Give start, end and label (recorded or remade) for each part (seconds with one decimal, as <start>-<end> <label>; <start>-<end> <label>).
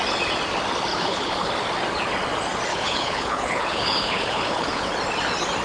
0.0-0.9 recorded; 0.9-1.5 remade; 1.5-2.7 recorded; 2.7-4.9 remade; 4.9-5.6 recorded